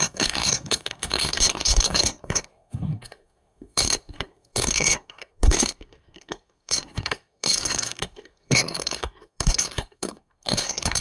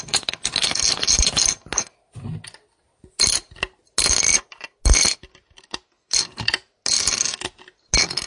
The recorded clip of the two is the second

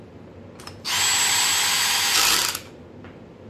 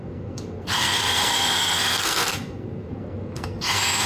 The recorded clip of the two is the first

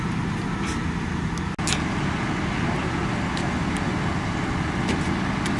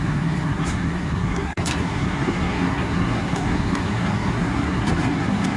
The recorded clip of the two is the first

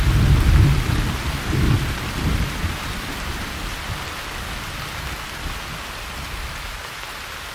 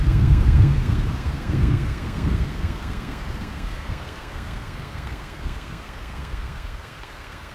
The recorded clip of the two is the first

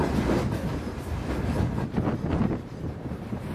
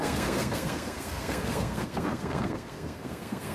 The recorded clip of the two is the first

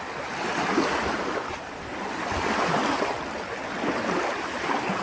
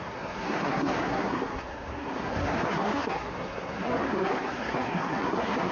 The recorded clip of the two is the first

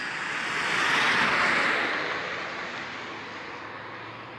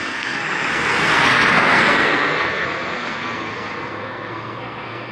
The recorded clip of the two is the first